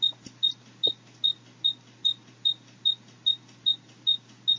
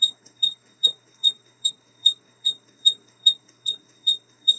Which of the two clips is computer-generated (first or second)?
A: second